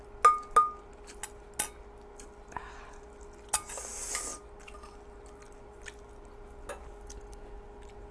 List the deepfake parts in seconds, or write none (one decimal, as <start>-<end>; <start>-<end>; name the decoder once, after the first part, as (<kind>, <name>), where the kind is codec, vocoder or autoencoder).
none